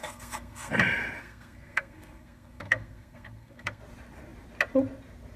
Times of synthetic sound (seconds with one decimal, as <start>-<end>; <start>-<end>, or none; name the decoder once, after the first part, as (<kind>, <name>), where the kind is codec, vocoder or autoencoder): 0.0-0.7 (codec, SNAC); 1.2-3.8